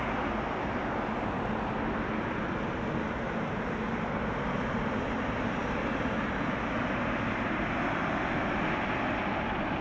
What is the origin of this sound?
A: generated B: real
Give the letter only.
B